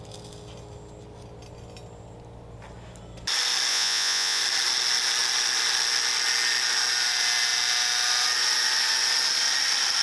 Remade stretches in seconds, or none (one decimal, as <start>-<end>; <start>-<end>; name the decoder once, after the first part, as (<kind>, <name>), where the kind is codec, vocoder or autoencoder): 3.7-4.4 (vocoder, Vocos)